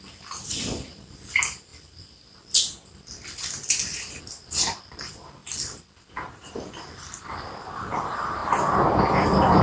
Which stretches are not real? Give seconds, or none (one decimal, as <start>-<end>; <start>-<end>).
0.0-8.4